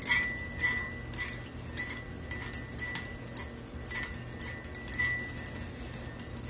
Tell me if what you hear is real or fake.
real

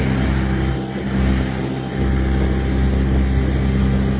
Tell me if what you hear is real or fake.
real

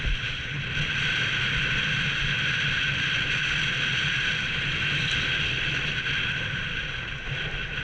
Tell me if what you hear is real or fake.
real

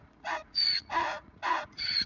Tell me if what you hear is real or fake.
fake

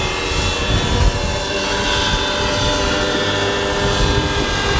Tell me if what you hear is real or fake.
real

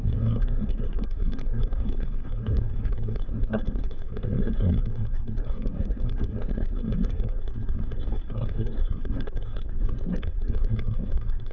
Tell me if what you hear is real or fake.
fake